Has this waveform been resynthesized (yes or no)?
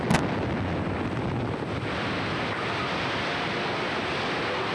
no